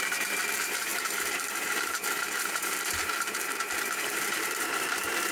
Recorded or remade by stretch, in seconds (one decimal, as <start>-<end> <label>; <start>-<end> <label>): 0.0-5.3 remade